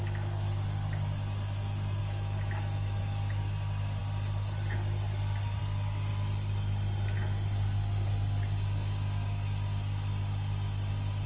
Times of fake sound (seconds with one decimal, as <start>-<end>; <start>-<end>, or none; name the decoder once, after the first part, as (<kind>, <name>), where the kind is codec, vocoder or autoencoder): 2.0-3.0 (autoencoder, DAC-VAE)